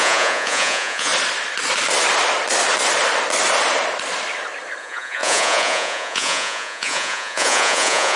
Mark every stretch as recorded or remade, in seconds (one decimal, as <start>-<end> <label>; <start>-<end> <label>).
0.0-1.1 remade; 1.1-4.8 recorded; 4.8-8.2 remade